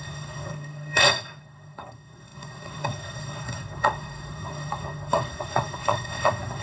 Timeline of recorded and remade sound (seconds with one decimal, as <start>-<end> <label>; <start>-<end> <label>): 0.0-6.6 remade